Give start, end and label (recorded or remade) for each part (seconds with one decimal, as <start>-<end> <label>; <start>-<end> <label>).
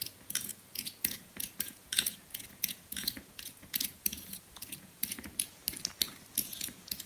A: 0.0-5.6 remade; 5.6-6.3 recorded; 6.3-7.1 remade